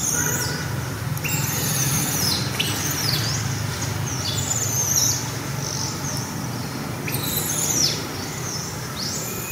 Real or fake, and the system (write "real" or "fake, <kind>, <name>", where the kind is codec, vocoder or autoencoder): real